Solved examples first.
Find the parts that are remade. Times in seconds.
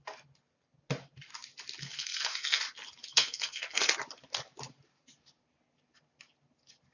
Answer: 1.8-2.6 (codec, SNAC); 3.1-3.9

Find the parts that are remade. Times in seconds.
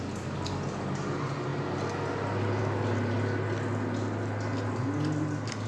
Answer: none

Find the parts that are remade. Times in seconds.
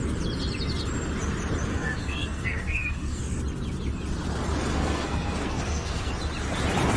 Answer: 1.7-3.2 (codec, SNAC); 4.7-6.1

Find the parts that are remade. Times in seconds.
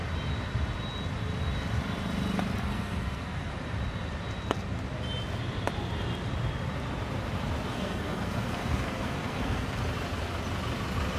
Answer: 2.7-3.5 (codec, SNAC); 7.7-9.8